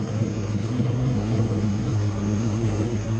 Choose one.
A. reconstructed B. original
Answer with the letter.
A